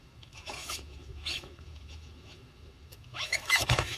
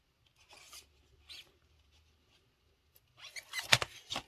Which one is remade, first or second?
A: first